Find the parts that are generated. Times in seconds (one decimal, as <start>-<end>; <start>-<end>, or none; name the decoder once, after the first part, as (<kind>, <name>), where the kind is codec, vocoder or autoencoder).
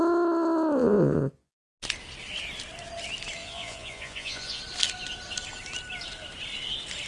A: 0.8-1.5 (vocoder, Vocos); 3.4-4.6